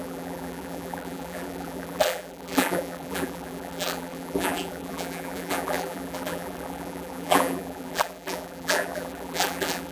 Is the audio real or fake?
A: fake